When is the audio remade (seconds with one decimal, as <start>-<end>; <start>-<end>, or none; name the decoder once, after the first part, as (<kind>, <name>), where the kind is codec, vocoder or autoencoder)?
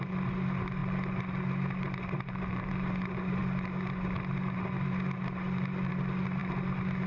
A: none